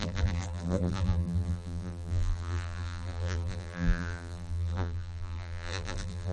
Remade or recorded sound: remade